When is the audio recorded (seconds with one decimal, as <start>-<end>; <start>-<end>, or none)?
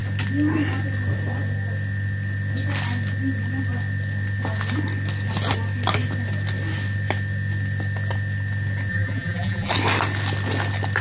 0.0-8.9; 9.7-11.0